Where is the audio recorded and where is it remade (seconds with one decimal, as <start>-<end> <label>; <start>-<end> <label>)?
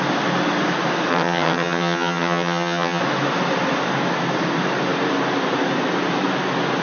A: 0.0-1.1 recorded; 1.1-3.0 remade; 3.0-6.8 recorded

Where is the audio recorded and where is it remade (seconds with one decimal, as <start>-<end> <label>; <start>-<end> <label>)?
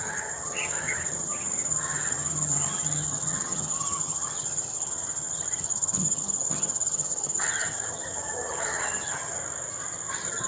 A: 0.0-9.4 remade; 9.4-10.1 recorded; 10.1-10.5 remade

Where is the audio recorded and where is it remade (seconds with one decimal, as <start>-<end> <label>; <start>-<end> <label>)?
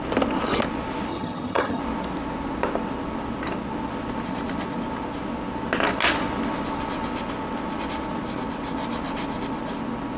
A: 0.0-1.1 recorded; 1.1-1.8 remade; 1.8-10.2 recorded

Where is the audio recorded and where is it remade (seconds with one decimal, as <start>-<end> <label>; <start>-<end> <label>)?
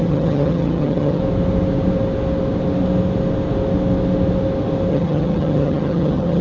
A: 0.0-1.2 remade; 1.2-4.9 recorded; 4.9-6.4 remade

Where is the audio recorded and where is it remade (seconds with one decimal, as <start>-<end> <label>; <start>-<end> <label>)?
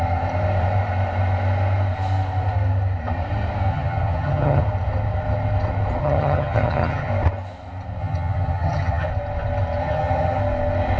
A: 0.0-3.7 recorded; 3.7-4.6 remade; 4.6-6.0 recorded; 6.0-7.1 remade; 7.1-8.0 recorded; 8.0-9.1 remade; 9.1-9.8 recorded; 9.8-10.4 remade; 10.4-11.0 recorded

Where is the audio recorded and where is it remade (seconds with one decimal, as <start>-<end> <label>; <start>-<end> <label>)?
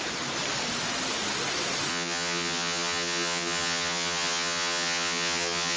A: 0.0-1.9 recorded; 1.9-5.8 remade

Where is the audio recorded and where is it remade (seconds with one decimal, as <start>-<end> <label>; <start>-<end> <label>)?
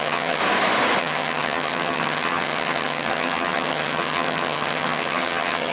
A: 0.0-0.4 remade; 0.4-1.0 recorded; 1.0-5.7 remade